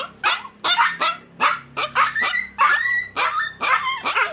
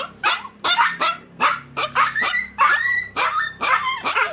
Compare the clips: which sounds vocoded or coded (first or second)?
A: second